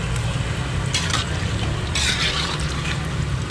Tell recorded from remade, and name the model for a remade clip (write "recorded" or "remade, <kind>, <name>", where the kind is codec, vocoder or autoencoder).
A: recorded